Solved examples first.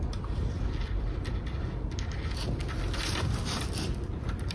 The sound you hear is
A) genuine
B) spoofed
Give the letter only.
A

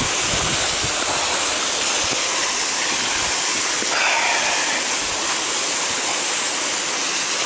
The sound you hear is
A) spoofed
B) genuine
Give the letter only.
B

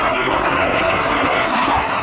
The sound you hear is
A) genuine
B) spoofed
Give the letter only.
B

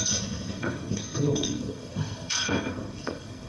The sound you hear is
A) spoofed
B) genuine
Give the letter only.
A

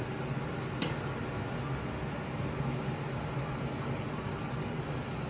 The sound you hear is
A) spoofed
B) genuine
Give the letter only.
B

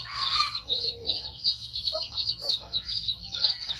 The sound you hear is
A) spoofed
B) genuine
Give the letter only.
A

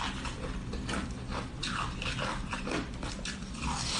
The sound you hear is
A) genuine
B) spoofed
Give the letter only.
B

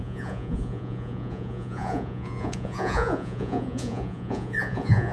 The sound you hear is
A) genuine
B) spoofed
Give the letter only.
B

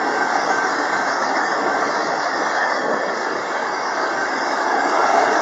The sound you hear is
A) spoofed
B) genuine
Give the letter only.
A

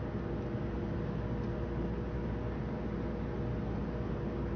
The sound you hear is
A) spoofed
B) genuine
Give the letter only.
B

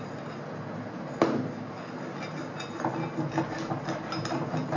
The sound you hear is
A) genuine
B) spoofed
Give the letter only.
A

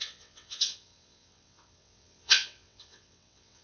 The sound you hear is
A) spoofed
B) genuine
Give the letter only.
A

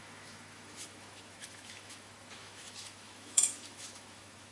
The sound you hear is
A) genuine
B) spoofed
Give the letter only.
B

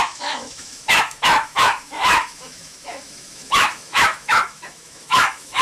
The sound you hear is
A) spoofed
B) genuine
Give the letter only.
A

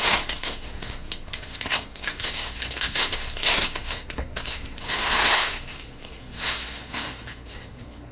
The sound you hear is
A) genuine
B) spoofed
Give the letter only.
B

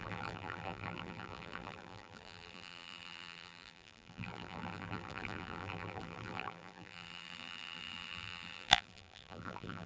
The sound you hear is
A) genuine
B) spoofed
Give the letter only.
B